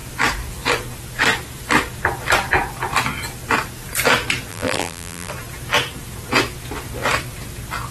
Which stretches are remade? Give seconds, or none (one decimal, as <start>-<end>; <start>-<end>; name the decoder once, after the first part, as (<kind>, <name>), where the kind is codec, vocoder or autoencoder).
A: 4.5-5.3 (vocoder, BigVGAN v2)